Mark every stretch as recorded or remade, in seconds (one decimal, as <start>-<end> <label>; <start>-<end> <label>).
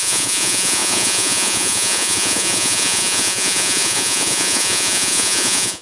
0.0-5.8 remade